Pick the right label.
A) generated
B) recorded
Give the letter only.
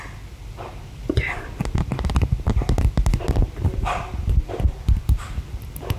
A